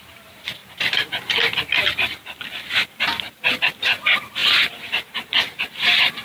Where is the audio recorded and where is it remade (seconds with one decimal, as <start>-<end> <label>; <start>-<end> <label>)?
0.0-6.2 recorded